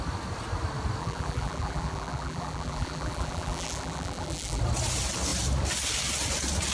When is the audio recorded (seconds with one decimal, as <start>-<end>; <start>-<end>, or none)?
0.0-1.0; 4.6-6.7